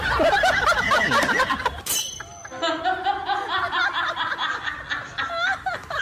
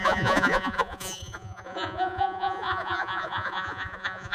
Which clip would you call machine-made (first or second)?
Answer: second